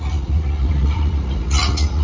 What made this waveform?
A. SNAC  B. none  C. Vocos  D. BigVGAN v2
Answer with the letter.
C